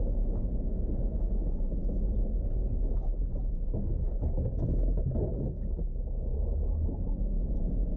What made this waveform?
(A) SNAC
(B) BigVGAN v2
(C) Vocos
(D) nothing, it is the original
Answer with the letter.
D